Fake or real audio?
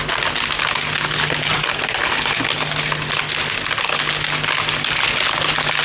real